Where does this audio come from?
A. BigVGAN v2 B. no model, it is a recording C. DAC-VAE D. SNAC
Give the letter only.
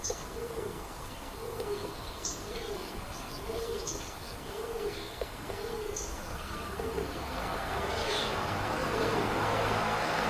D